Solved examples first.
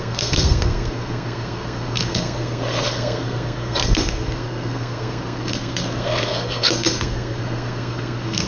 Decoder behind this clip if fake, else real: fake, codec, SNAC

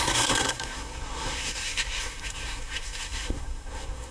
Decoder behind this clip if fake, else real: fake, codec, SNAC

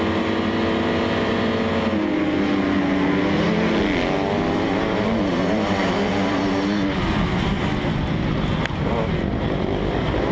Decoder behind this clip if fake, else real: real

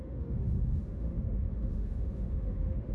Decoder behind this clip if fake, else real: fake, autoencoder, DAC-VAE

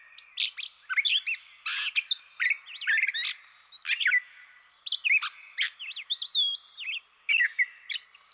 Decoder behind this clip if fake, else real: real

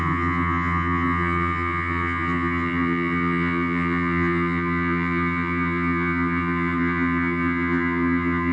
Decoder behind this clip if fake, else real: fake, vocoder, HiFi-GAN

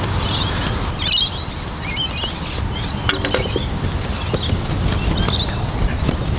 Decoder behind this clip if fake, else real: real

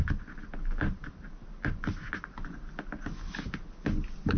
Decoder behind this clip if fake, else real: real